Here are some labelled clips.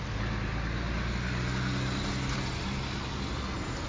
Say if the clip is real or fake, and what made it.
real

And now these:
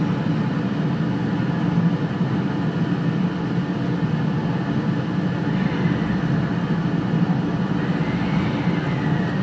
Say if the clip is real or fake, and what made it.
real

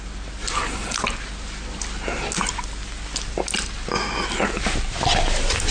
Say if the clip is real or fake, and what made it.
real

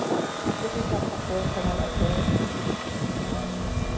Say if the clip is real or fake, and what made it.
real